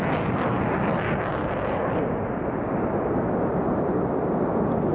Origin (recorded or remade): recorded